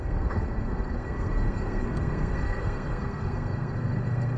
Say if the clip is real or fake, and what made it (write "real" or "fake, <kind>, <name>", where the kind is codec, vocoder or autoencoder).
fake, codec, SNAC